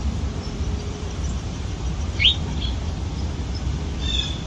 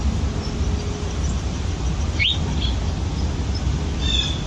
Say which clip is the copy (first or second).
first